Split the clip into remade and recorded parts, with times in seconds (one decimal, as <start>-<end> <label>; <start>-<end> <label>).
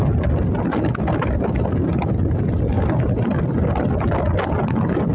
0.0-5.1 recorded